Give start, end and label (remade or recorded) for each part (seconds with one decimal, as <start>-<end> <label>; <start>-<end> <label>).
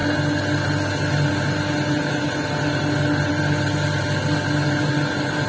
0.0-5.5 recorded